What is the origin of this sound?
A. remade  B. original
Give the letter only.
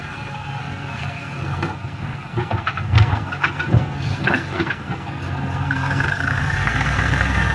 A